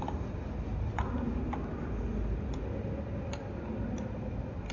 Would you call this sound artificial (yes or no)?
no